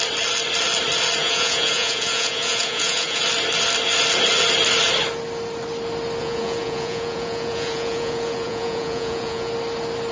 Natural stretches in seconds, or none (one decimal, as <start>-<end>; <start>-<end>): 0.0-1.2; 3.2-6.2; 9.5-10.1